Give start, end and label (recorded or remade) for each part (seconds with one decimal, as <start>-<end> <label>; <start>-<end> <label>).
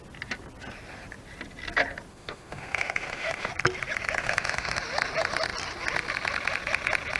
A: 0.0-2.1 recorded; 2.1-3.5 remade; 3.5-4.2 recorded; 4.2-4.8 remade; 4.8-7.2 recorded